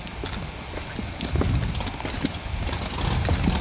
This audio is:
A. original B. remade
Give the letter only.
A